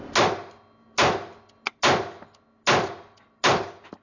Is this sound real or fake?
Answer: real